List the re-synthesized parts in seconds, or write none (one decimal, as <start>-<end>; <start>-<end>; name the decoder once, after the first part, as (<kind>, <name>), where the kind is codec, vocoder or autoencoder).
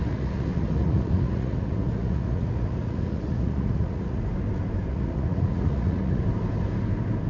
0.0-4.2 (vocoder, Vocos); 4.9-6.2